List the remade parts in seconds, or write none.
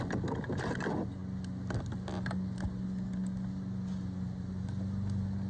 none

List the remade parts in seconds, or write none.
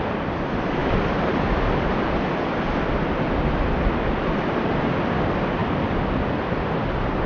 5.6-6.7 (vocoder, BigVGAN v2)